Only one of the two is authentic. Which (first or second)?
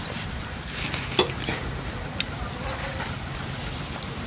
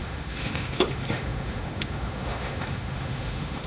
first